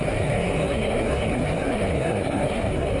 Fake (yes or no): yes